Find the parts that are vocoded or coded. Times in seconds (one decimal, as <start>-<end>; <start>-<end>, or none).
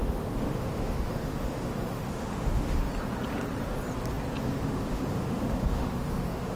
0.0-2.9; 4.4-6.6